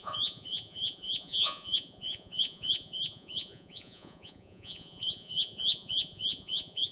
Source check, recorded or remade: remade